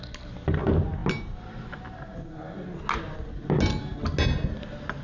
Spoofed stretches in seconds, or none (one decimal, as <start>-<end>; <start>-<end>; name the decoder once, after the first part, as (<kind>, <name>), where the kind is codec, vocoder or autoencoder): none